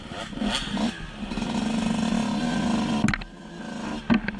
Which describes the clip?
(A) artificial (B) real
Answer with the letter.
B